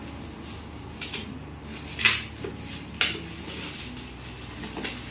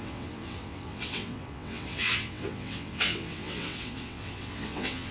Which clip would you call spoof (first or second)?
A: second